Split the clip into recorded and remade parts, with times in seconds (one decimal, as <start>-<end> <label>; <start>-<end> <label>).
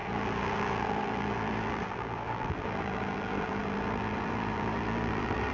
0.0-5.5 remade